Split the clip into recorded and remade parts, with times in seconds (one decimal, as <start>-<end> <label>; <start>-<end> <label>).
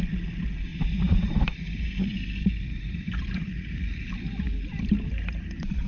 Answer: 0.0-0.7 recorded; 0.7-4.2 remade; 4.2-4.7 recorded; 4.7-5.9 remade